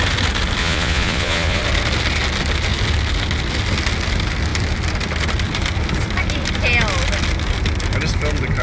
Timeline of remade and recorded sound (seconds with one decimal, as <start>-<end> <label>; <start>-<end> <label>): 0.0-0.6 recorded; 0.6-1.6 remade; 1.6-8.6 recorded